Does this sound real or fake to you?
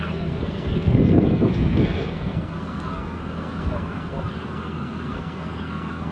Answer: fake